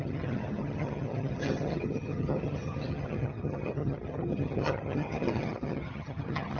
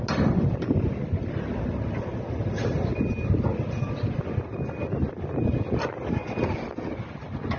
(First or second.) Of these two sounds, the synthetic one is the first